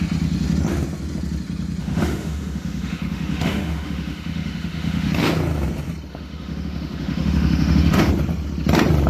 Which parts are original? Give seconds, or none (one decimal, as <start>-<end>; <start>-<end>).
0.0-1.8; 5.1-6.1; 8.1-9.1